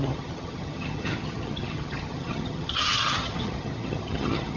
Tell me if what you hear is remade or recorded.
remade